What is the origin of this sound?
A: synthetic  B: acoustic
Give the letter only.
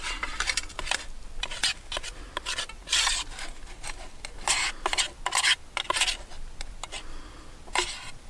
B